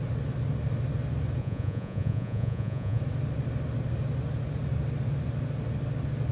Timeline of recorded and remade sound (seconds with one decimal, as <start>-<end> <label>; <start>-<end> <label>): 0.0-1.4 recorded; 1.4-3.0 remade; 3.0-6.3 recorded